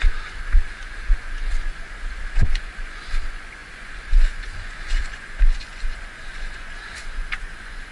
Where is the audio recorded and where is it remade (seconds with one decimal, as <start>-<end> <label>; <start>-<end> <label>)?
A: 0.0-7.9 remade